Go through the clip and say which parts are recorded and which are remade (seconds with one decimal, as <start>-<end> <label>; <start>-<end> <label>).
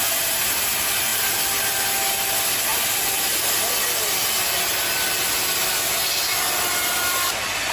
0.0-7.7 recorded